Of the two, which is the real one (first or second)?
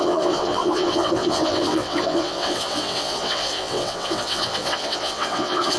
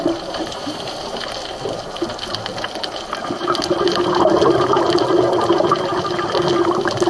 second